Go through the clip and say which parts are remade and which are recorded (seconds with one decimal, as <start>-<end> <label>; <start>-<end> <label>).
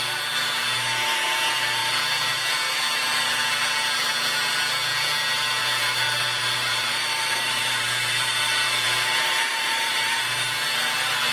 0.0-5.6 recorded; 5.6-10.1 remade; 10.1-11.3 recorded